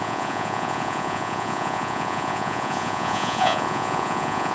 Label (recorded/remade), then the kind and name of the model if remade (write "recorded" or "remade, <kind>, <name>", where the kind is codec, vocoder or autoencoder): remade, vocoder, Vocos